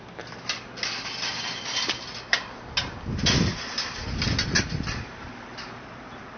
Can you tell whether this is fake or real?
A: real